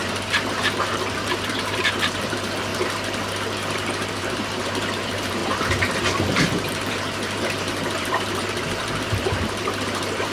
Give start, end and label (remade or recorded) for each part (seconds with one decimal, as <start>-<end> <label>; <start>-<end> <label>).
0.0-2.7 remade; 2.7-4.2 recorded; 4.2-5.4 remade; 5.4-6.3 recorded; 6.3-10.3 remade